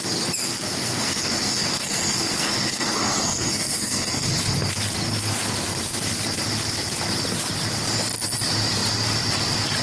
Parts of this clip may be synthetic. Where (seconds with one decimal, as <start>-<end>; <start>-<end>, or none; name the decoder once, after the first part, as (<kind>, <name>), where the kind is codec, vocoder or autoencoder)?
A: 0.4-4.3 (codec, SNAC)